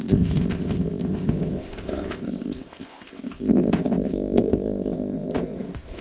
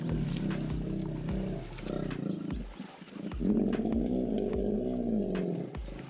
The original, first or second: second